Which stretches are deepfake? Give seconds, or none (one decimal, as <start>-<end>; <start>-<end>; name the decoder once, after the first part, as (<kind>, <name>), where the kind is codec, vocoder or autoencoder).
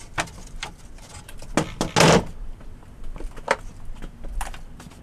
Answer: none